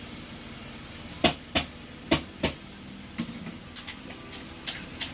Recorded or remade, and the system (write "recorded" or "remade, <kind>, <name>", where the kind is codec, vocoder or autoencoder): recorded